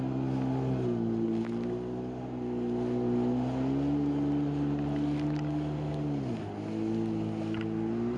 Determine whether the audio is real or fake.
real